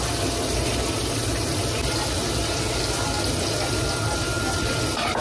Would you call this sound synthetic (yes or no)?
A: no